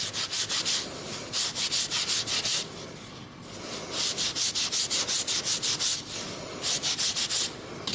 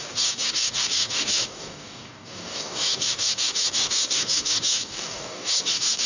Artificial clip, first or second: second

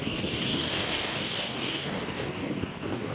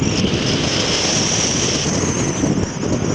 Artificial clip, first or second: first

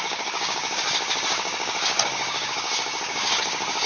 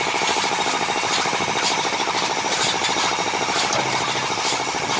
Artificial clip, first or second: first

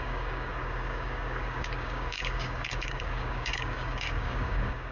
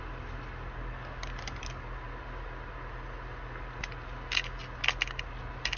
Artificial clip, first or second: first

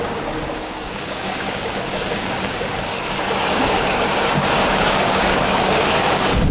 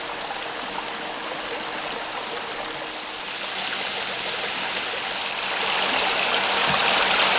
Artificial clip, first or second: first